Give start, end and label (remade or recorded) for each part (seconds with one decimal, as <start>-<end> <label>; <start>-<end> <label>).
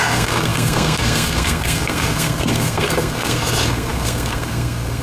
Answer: 0.0-5.0 remade